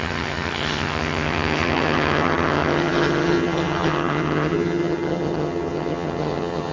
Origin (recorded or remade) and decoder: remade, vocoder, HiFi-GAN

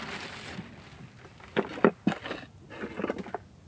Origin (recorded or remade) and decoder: recorded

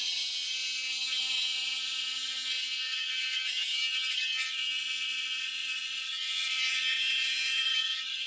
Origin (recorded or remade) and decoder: remade, vocoder, HiFi-GAN